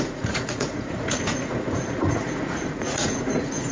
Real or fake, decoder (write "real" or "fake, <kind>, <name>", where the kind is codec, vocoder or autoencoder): fake, vocoder, Vocos